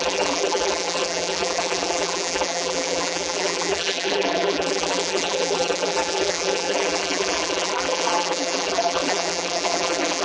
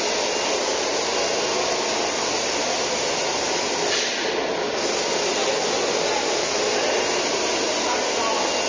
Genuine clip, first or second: second